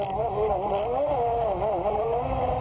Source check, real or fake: real